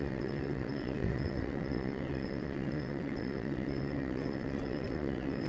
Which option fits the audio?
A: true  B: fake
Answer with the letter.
B